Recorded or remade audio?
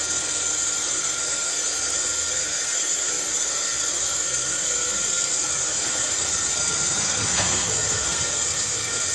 remade